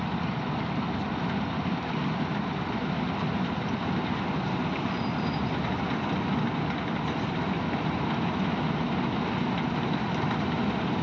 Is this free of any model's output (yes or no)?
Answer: yes